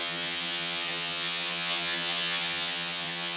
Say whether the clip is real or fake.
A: fake